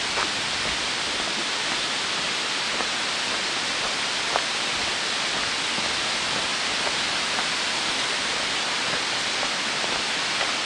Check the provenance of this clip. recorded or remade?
recorded